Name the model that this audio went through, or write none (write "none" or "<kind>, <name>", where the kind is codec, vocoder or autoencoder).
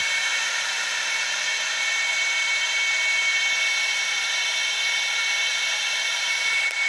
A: none